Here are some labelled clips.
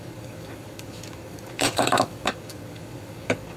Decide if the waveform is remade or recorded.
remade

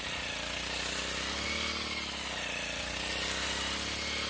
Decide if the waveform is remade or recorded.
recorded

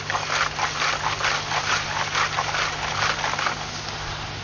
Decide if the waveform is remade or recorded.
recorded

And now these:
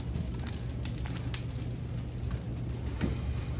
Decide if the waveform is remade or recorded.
recorded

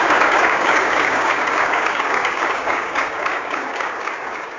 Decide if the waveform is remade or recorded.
remade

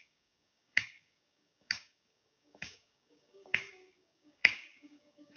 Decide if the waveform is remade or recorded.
remade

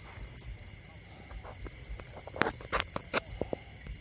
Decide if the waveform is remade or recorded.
recorded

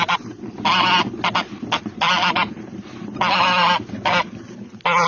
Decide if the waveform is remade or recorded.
recorded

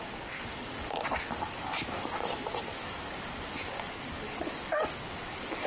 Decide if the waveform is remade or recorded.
remade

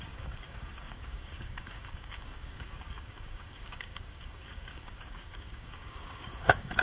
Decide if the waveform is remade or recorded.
remade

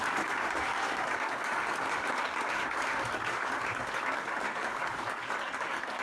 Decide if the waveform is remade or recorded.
remade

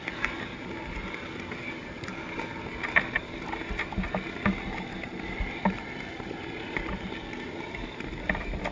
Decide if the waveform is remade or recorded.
recorded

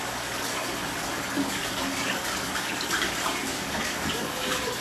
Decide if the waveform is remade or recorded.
remade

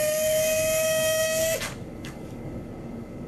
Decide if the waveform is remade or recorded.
remade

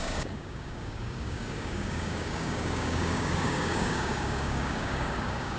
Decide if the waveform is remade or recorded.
remade